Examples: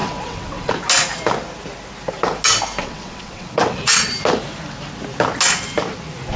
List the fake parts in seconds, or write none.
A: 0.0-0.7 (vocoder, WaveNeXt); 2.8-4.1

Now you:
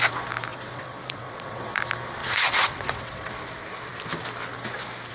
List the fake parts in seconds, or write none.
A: 0.5-1.8 (vocoder, WaveNeXt); 2.2-3.3

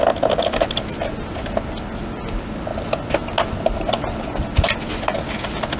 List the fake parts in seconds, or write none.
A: none